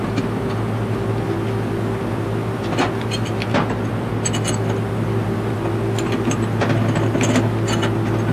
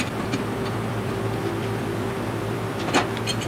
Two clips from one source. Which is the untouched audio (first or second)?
first